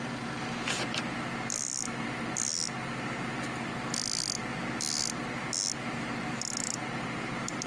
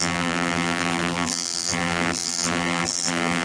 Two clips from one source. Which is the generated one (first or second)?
second